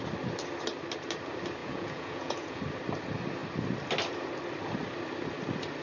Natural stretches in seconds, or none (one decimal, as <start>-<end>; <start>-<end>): 0.0-1.6; 2.6-5.8